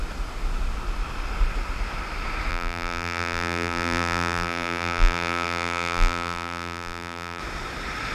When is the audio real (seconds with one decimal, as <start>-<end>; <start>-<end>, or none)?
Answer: 0.0-2.5; 7.4-8.1